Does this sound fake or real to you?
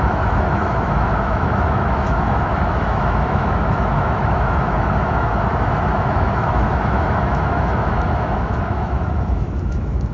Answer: fake